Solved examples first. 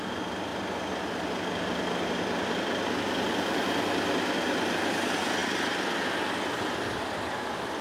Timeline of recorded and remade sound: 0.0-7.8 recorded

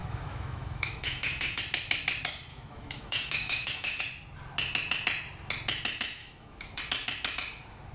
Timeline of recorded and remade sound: 0.0-1.6 remade; 1.6-2.5 recorded; 2.5-4.0 remade; 4.0-6.2 recorded; 6.2-6.8 remade; 6.8-7.9 recorded

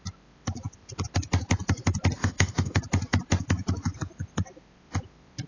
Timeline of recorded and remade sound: 0.0-2.2 recorded; 2.2-2.8 remade; 2.8-5.5 recorded

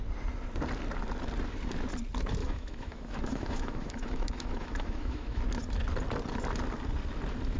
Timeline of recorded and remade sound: 0.0-2.4 recorded; 2.4-5.4 remade; 5.4-7.6 recorded